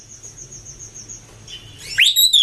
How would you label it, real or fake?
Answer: real